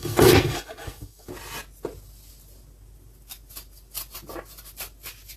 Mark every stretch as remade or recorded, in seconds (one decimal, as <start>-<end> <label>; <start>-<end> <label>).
0.0-1.3 remade; 1.3-5.4 recorded

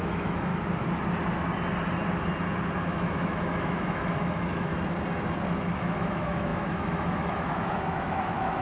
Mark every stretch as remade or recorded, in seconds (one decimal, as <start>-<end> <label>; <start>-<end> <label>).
0.0-0.5 remade; 0.5-2.9 recorded; 2.9-4.7 remade; 4.7-5.6 recorded; 5.6-8.6 remade

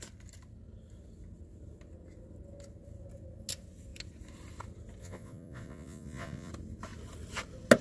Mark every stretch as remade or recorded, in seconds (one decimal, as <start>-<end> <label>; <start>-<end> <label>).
0.0-5.0 recorded; 5.0-6.5 remade; 6.5-7.8 recorded

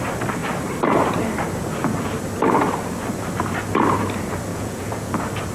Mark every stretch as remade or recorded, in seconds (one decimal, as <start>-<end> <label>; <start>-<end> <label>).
0.0-4.5 recorded; 4.5-5.1 remade; 5.1-5.5 recorded

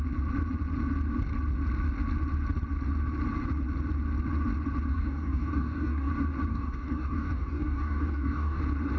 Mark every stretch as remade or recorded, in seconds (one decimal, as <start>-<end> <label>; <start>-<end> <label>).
0.0-4.9 recorded; 4.9-6.1 remade; 6.1-6.5 recorded; 6.5-8.6 remade; 8.6-9.0 recorded